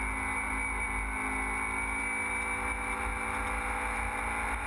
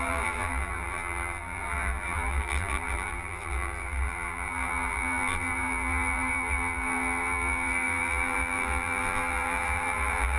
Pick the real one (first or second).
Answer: first